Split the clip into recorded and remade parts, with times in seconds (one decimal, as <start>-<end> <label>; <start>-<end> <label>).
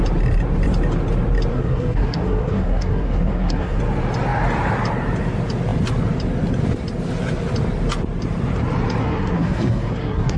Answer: 0.0-1.5 recorded; 1.5-3.8 remade; 3.8-9.0 recorded; 9.0-10.4 remade